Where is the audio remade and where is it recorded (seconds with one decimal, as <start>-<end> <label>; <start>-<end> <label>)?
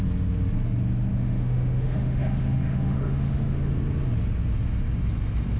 0.0-1.1 recorded; 1.1-3.7 remade; 3.7-5.6 recorded